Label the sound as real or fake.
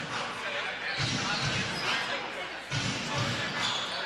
real